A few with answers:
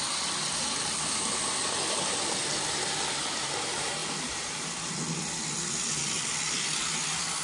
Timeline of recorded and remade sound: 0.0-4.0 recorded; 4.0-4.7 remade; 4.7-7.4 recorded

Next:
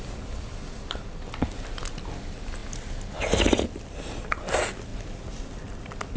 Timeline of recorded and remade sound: 0.0-6.2 recorded